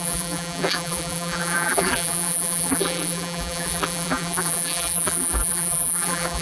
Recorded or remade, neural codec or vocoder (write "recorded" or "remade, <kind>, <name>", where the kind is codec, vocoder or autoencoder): remade, vocoder, BigVGAN v2